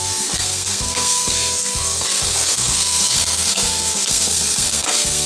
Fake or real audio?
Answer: fake